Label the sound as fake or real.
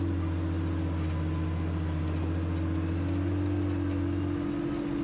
real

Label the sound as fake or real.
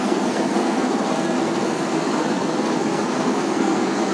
fake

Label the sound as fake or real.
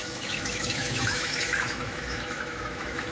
fake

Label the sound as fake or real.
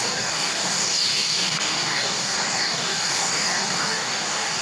fake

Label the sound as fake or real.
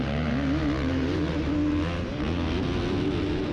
real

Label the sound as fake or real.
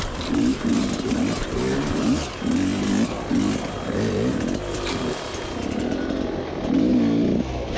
real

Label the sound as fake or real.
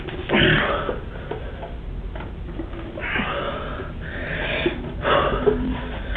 real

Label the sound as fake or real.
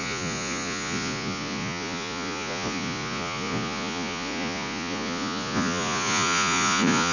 fake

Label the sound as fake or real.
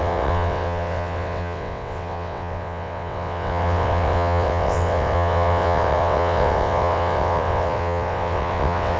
fake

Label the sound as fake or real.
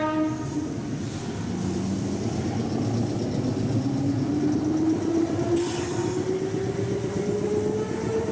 real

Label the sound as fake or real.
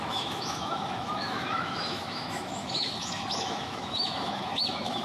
fake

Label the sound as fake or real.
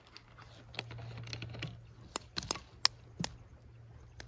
real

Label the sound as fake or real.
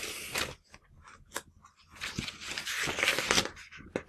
real